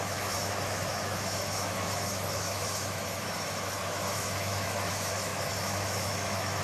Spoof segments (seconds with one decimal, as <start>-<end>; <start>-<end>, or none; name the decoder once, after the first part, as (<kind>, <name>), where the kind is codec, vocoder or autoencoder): 0.0-6.6 (autoencoder, DAC-VAE)